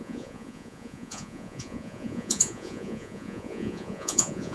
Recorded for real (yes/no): no